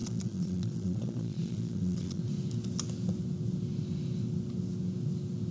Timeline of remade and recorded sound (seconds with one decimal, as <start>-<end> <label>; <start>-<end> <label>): 0.0-2.2 remade; 2.2-5.5 recorded